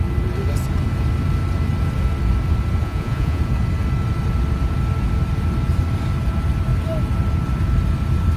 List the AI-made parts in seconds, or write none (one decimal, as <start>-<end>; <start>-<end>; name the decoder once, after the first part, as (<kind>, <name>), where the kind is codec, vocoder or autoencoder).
2.8-3.4 (vocoder, Vocos)